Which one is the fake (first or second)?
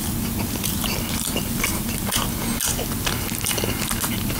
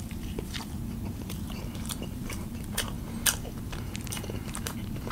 second